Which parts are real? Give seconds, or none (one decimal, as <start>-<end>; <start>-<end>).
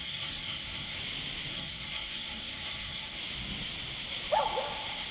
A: 1.0-1.5; 3.2-5.1